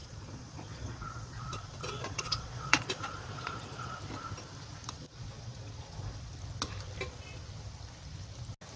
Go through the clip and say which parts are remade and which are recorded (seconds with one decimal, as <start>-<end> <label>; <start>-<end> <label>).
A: 0.0-4.0 remade; 4.0-4.8 recorded; 4.8-6.3 remade; 6.3-8.8 recorded